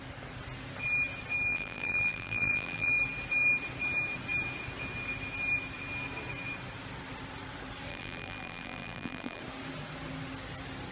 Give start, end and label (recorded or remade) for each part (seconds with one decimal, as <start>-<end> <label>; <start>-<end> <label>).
0.0-1.5 recorded; 1.5-2.9 remade; 2.9-7.9 recorded; 7.9-9.4 remade; 9.4-10.9 recorded